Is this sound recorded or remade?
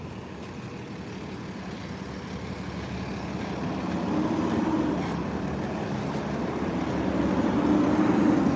recorded